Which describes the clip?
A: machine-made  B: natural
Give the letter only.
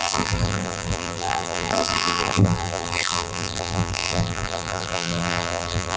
A